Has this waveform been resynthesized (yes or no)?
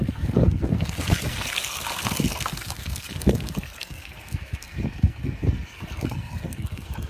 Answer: yes